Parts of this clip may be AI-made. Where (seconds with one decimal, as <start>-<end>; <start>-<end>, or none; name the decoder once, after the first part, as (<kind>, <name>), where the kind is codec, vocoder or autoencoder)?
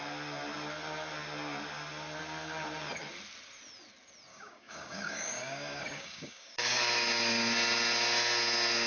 4.3-6.8 (codec, DAC)